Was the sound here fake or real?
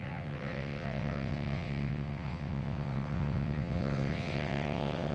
fake